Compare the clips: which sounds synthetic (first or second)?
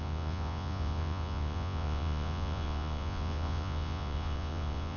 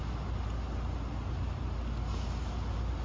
first